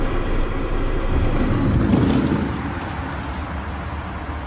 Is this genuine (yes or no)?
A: yes